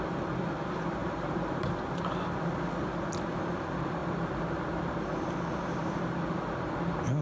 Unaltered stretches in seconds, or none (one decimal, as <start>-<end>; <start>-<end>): 0.0-1.0; 2.0-7.2